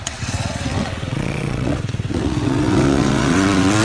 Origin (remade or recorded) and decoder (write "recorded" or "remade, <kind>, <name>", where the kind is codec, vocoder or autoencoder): remade, vocoder, WaveNeXt